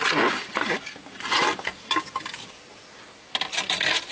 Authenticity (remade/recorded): recorded